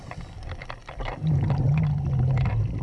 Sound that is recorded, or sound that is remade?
recorded